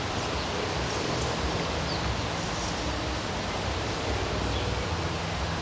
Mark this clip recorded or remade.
recorded